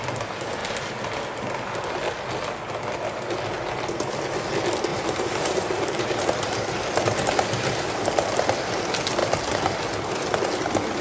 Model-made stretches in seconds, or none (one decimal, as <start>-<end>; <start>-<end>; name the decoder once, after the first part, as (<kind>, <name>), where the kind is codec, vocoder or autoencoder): 4.9-6.2 (vocoder, BigVGAN v2); 9.2-9.8